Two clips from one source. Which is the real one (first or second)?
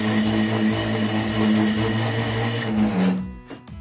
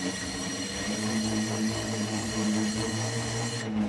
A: first